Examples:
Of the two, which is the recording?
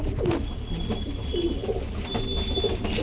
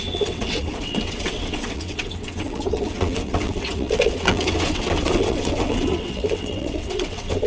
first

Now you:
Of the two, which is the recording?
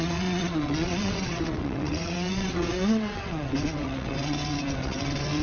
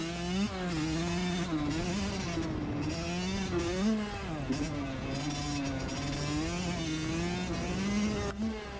second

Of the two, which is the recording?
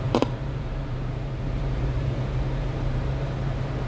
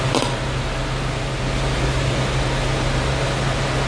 second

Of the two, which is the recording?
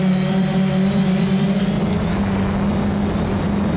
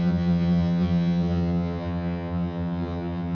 first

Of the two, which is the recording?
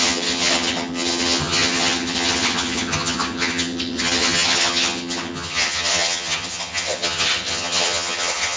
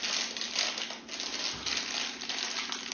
second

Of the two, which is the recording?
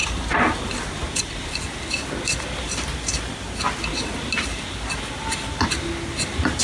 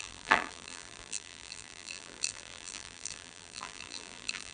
first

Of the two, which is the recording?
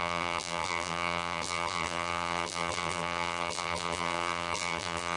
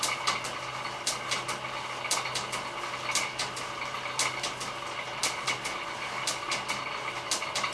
second